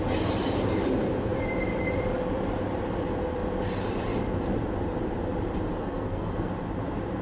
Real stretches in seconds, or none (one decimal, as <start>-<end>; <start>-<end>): 0.0-5.8; 6.5-7.2